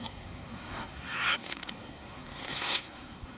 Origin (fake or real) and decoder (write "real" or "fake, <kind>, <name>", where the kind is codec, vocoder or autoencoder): fake, codec, SNAC